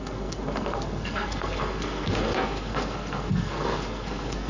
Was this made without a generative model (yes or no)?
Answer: no